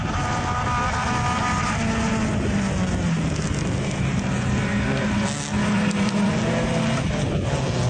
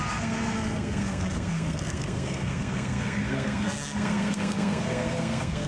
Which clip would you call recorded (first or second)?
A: first